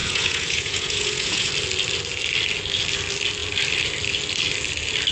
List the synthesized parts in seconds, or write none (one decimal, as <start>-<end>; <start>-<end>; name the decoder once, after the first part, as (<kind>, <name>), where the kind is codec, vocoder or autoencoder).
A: 0.0-1.5 (vocoder, Vocos)